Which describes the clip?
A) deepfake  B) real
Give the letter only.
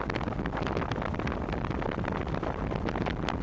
B